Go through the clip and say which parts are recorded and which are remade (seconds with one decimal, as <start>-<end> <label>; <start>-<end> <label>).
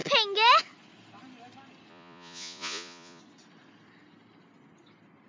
0.0-1.9 recorded; 1.9-3.2 remade; 3.2-5.3 recorded